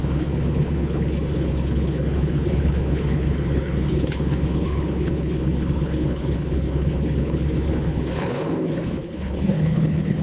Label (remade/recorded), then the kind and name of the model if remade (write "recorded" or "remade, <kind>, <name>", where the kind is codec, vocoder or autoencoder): remade, codec, HILCodec